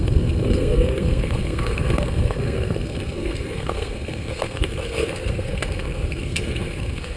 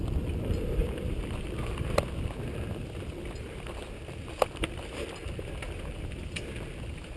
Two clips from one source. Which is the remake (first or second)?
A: first